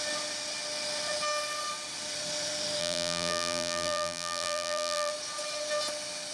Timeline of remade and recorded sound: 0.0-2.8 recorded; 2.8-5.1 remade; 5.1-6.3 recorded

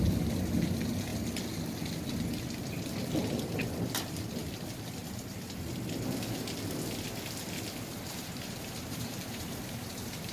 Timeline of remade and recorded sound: 0.0-5.0 recorded; 5.0-5.7 remade; 5.7-7.9 recorded; 7.9-10.3 remade

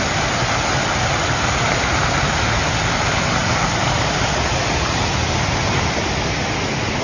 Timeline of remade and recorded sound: 0.0-3.4 recorded; 3.4-4.5 remade; 4.5-7.0 recorded

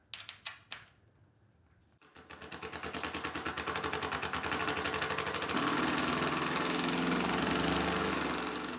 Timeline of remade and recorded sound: 0.0-8.8 recorded

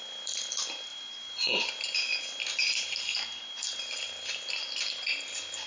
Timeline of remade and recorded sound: 0.0-0.9 recorded; 0.9-1.7 remade; 1.7-5.7 recorded

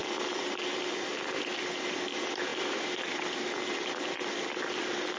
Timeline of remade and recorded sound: 0.0-1.8 remade; 1.8-5.2 recorded